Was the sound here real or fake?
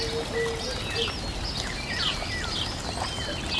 real